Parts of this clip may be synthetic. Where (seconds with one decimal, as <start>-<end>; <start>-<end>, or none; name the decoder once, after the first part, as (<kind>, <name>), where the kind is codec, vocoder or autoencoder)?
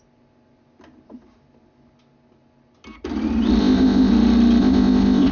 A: 3.6-4.1 (codec, ZipCodec); 4.6-5.3